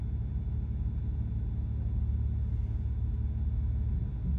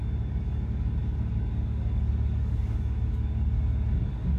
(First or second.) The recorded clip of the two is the first